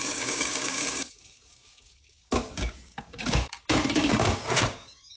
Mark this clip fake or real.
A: fake